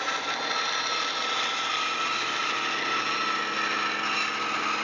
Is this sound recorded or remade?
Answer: recorded